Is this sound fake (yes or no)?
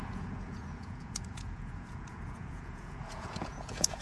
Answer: yes